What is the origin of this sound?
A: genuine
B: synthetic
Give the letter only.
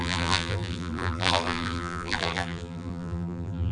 B